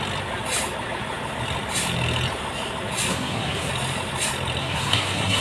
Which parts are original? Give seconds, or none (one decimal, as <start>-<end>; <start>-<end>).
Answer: 0.0-3.1; 3.7-4.6